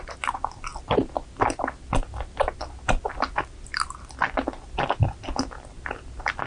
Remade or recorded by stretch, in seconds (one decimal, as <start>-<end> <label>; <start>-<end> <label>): 0.0-6.5 recorded